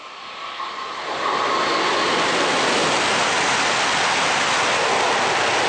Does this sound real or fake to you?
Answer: real